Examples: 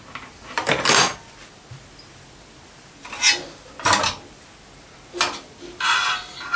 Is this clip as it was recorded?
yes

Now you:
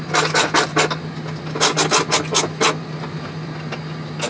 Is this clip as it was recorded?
yes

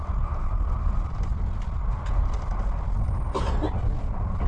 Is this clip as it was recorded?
yes